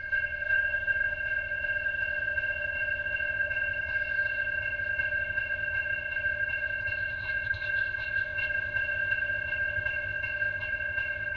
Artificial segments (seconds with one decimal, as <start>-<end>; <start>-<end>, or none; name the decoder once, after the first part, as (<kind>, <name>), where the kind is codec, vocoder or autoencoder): 0.0-11.4 (codec, ZipCodec)